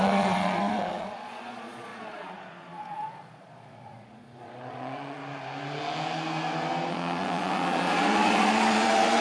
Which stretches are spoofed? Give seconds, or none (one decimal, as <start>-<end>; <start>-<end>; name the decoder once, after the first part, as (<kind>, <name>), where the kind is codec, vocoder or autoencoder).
0.0-5.2 (vocoder, Vocos); 6.9-9.2